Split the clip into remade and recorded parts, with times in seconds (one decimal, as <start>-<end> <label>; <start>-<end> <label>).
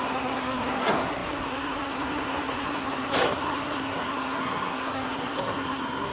0.0-6.1 remade